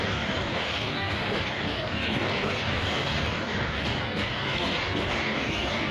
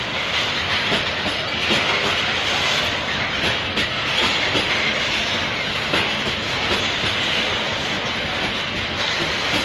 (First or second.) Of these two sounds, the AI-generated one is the first